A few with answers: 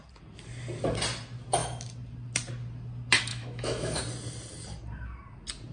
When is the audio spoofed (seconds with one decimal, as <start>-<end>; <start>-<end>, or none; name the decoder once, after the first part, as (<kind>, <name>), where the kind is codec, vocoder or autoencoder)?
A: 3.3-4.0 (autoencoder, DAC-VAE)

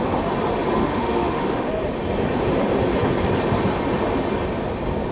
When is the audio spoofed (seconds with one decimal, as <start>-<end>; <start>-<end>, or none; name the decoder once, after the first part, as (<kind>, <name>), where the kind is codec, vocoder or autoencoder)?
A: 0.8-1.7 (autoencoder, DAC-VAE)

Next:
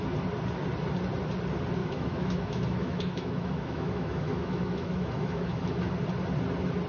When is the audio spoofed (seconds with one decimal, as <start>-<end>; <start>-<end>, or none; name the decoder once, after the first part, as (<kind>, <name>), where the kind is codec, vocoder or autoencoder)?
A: 1.8-5.9 (autoencoder, DAC-VAE)

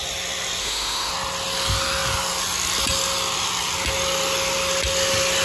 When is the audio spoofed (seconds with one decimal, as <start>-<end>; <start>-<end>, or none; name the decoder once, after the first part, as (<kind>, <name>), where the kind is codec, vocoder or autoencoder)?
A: 0.6-1.1 (autoencoder, DAC-VAE)

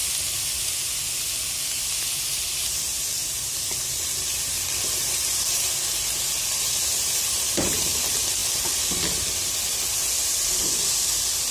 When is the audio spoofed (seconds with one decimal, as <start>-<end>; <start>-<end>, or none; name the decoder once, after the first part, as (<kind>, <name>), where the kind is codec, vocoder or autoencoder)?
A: none